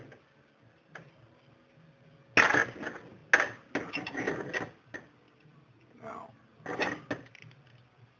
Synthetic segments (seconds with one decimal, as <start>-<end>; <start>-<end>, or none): none